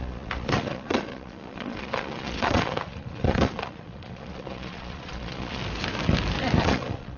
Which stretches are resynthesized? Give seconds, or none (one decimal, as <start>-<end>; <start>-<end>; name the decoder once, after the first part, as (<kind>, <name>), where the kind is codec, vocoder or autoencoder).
0.0-5.6 (vocoder, Vocos); 6.6-7.2